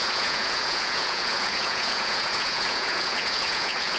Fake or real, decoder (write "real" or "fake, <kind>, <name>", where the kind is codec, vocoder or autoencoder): fake, vocoder, Vocos